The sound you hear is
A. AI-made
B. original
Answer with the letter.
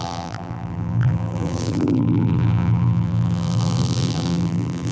A